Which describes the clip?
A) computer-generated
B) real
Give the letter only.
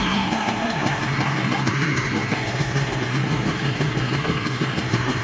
A